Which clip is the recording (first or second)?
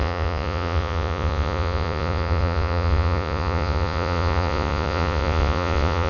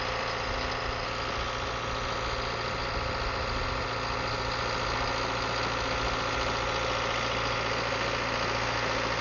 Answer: second